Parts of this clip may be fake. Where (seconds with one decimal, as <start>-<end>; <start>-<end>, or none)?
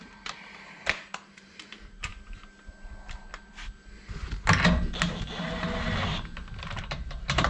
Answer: 0.0-2.1; 6.6-7.5